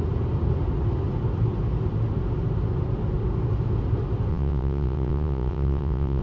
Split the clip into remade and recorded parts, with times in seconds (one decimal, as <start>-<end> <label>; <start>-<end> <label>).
0.0-4.3 recorded; 4.3-6.2 remade

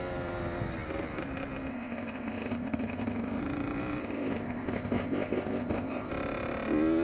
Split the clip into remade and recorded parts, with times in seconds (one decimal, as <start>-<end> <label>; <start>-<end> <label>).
0.0-1.7 recorded; 1.7-3.4 remade; 3.4-4.0 recorded; 4.0-6.1 remade; 6.1-7.0 recorded

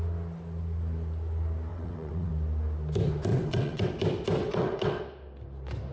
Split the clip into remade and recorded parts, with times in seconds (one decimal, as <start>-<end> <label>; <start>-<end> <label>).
0.0-1.7 recorded; 1.7-2.3 remade; 2.3-3.3 recorded; 3.3-3.9 remade; 3.9-4.4 recorded; 4.4-5.0 remade; 5.0-5.9 recorded

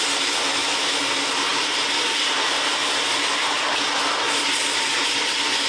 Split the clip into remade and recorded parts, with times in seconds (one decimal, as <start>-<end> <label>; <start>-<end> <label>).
0.0-0.5 recorded; 0.5-1.0 remade; 1.0-5.7 recorded

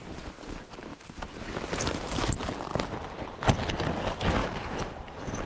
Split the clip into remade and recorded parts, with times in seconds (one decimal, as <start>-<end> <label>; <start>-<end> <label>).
0.0-0.9 recorded; 0.9-2.3 remade; 2.3-4.4 recorded; 4.4-5.1 remade; 5.1-5.5 recorded

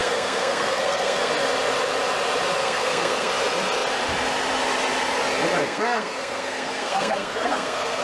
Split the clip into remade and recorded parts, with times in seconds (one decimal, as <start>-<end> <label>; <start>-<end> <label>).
0.0-1.3 remade; 1.3-2.6 recorded; 2.6-3.3 remade; 3.3-5.6 recorded; 5.6-8.0 remade

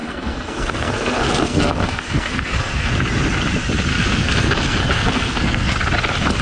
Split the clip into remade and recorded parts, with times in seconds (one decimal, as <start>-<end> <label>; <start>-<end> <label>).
0.0-2.9 remade; 2.9-3.9 recorded; 3.9-5.8 remade; 5.8-6.4 recorded